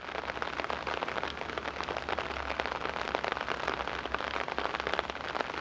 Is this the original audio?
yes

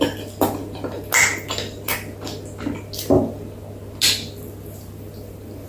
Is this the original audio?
yes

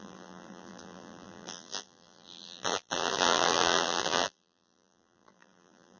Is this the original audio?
no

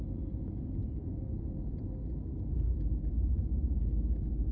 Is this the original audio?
yes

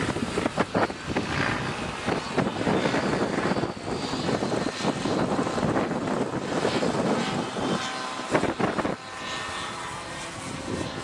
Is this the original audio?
yes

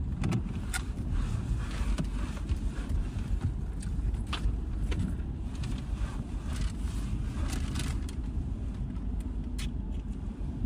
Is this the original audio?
yes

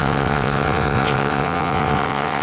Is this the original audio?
no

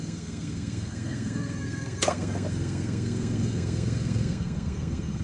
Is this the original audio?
no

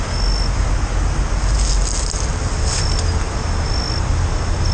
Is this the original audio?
yes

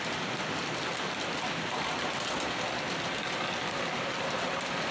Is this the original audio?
yes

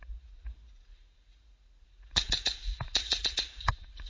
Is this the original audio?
no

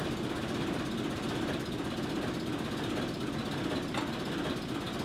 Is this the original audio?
yes